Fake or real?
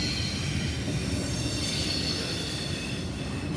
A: real